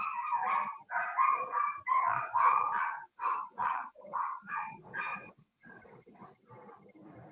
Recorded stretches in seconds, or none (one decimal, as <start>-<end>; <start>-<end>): 0.0-1.9; 6.3-7.3